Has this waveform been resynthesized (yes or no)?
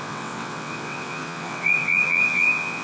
yes